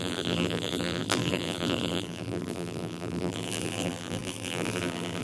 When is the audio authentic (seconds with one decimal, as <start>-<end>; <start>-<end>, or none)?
none